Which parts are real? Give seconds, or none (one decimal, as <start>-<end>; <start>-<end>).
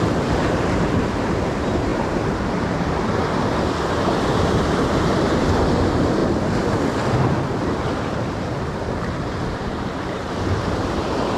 3.5-4.5; 6.2-8.5